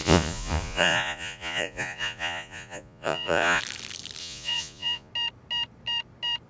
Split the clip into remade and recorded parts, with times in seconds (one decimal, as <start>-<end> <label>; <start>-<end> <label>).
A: 0.0-3.6 remade; 3.6-4.2 recorded; 4.2-5.1 remade; 5.1-6.5 recorded